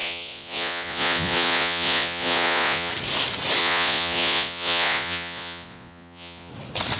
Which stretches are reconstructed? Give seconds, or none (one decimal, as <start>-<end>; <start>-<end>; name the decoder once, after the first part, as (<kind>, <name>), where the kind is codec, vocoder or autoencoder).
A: 0.0-2.9 (vocoder, Vocos); 3.6-6.5